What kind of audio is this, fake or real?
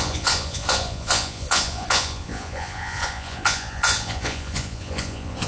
fake